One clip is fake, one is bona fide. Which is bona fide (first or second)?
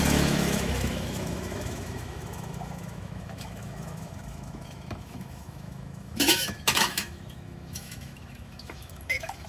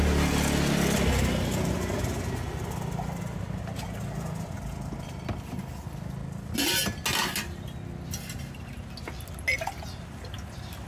second